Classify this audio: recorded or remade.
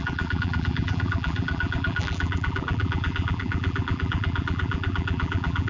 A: remade